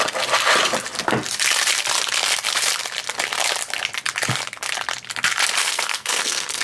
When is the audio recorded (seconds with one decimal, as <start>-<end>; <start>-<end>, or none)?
0.0-5.6